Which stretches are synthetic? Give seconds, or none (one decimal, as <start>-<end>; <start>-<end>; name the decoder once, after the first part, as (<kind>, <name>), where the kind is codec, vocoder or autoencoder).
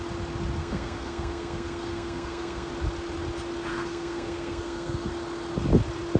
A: 0.6-2.7 (codec, SNAC); 3.7-5.1